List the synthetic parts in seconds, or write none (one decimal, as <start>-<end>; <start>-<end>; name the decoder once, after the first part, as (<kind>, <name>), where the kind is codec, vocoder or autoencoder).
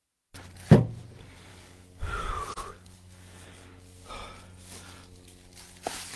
1.5-4.1 (codec, DAC)